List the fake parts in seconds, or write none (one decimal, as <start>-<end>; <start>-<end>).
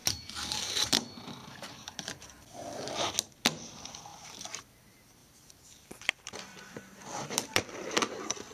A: 0.0-2.5; 4.1-4.6; 5.2-8.0